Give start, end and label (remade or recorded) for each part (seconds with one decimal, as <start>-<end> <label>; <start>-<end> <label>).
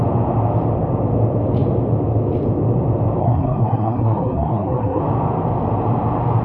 0.0-3.2 recorded; 3.2-5.0 remade; 5.0-6.4 recorded